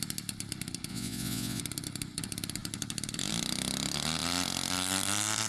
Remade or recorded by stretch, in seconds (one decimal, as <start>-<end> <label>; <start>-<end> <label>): 0.0-0.9 recorded; 0.9-1.6 remade; 1.6-5.5 recorded